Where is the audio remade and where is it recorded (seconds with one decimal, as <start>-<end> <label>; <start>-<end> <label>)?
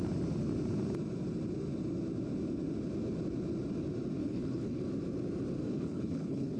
0.0-4.2 recorded; 4.2-4.8 remade; 4.8-5.7 recorded; 5.7-6.6 remade